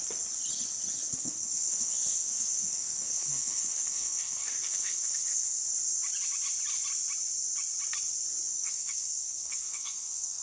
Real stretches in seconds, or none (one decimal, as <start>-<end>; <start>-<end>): 0.0-1.1; 5.6-8.5